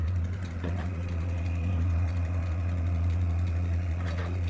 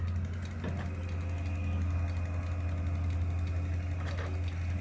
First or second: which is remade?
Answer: first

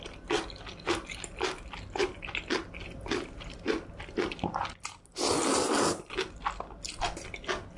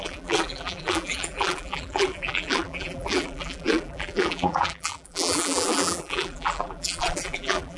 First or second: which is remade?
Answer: second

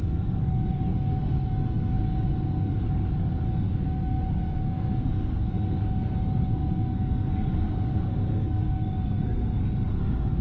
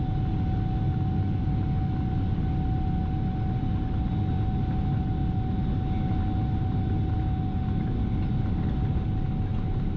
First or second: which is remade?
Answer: first